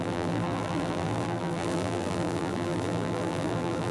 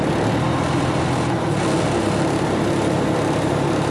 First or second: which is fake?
first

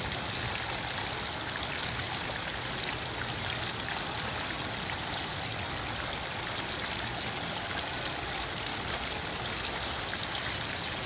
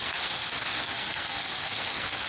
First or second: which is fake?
second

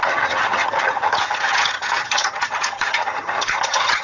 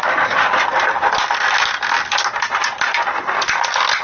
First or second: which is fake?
first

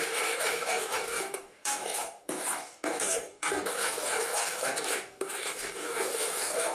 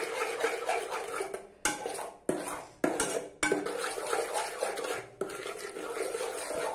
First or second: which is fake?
first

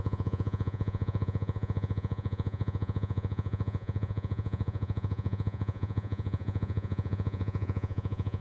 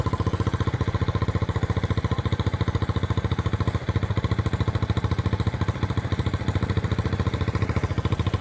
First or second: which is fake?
first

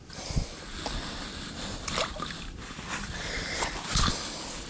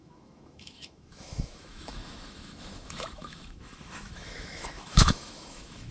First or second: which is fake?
second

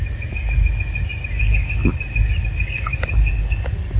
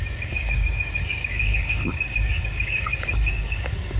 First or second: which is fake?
second